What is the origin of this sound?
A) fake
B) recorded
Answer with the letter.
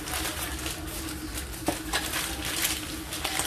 B